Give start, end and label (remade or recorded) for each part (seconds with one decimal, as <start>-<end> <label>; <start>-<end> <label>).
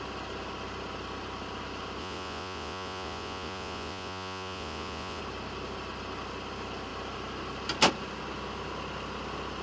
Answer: 0.0-2.0 recorded; 2.0-5.2 remade; 5.2-9.6 recorded